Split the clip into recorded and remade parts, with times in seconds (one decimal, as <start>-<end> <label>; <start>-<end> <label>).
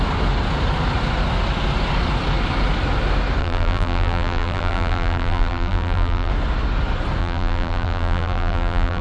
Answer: 0.0-3.4 recorded; 3.4-6.3 remade; 6.3-7.2 recorded; 7.2-9.0 remade